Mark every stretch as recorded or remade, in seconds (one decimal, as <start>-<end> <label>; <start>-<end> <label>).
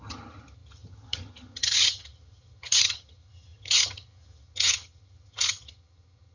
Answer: 0.0-6.3 remade